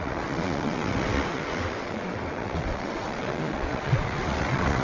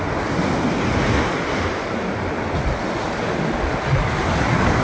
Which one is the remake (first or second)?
first